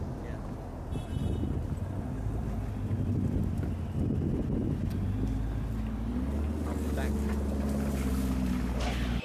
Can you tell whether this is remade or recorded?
recorded